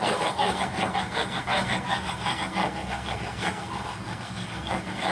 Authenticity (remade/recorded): remade